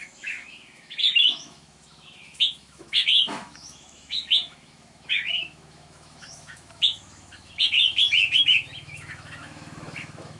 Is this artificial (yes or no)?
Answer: yes